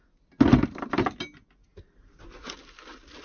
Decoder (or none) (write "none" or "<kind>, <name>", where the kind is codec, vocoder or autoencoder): none